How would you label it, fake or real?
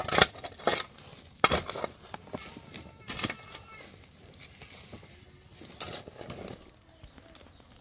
real